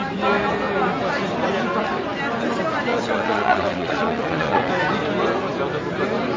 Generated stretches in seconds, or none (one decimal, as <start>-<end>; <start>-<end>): 2.9-4.7